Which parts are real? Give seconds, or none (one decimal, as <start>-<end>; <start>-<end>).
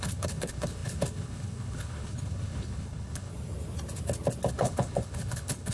3.3-4.5